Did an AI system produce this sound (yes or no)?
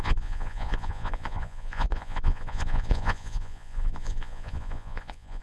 yes